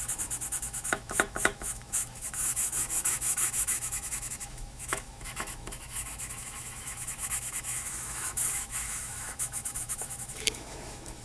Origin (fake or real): fake